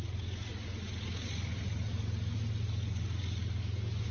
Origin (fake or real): real